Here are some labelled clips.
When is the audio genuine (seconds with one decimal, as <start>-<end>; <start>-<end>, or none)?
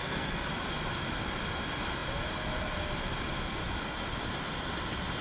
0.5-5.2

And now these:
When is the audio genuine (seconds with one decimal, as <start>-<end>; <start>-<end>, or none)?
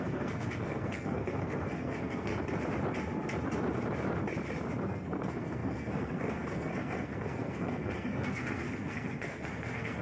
2.3-4.8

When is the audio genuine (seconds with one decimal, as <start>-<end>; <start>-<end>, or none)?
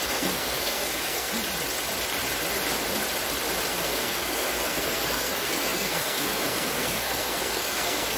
1.3-3.7